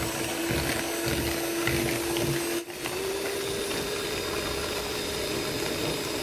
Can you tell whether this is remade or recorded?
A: recorded